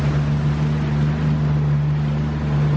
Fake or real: real